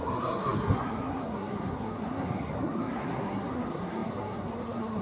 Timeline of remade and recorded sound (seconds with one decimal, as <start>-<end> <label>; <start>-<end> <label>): 0.0-5.0 remade